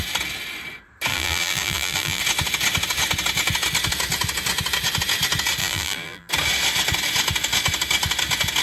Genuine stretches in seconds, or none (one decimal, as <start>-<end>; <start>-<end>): 0.0-1.1; 2.2-5.6; 6.3-8.6